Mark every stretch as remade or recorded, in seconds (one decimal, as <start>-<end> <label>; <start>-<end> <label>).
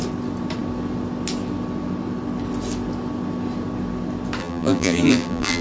0.0-4.4 recorded; 4.4-5.6 remade